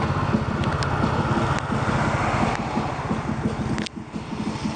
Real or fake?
real